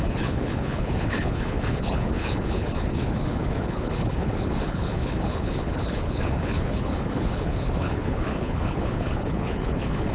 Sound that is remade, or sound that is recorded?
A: remade